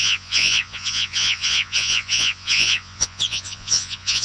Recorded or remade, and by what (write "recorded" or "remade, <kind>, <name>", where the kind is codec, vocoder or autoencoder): remade, vocoder, Vocos